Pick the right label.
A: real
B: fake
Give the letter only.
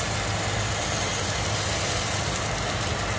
A